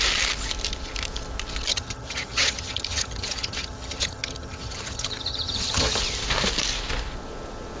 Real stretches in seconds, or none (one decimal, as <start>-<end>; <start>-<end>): 0.0-1.7; 6.0-7.8